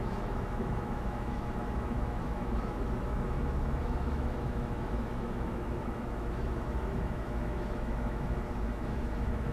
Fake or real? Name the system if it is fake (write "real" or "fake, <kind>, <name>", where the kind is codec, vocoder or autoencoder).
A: fake, autoencoder, DAC-VAE